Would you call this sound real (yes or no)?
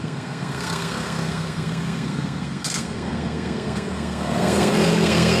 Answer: no